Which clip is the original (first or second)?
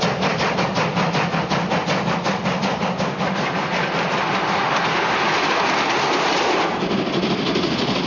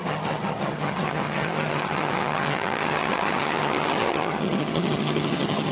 first